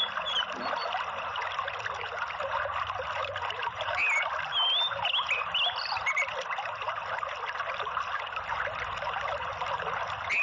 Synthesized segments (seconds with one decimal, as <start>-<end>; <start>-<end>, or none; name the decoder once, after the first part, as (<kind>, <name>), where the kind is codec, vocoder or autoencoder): 3.2-4.0 (vocoder, BigVGAN v2)